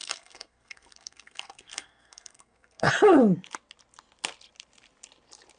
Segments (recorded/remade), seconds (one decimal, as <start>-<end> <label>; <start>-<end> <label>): 0.0-2.9 remade; 2.9-5.6 recorded